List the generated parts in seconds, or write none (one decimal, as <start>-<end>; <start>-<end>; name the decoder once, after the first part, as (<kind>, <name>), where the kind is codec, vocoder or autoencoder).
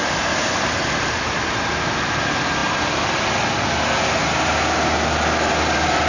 none